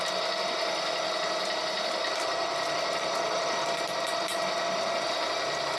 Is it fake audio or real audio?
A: real